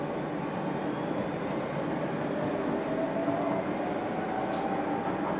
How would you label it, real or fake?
real